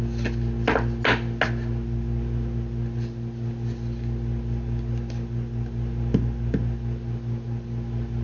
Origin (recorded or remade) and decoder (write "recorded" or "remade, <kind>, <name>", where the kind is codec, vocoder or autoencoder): recorded